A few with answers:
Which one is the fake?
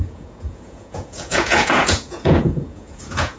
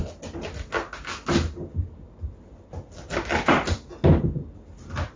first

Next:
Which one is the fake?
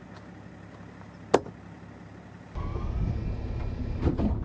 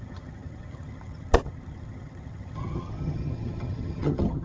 second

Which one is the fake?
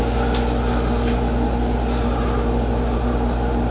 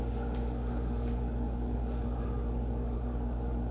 second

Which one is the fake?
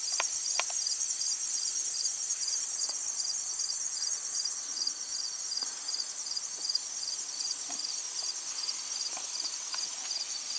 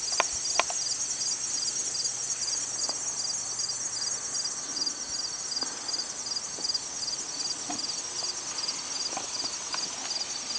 first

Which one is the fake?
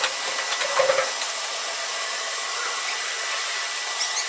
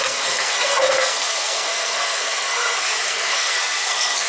second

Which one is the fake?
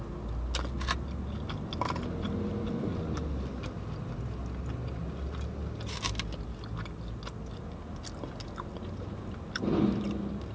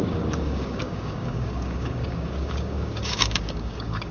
second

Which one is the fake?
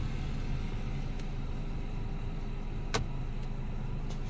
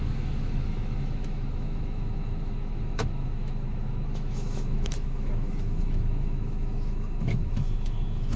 second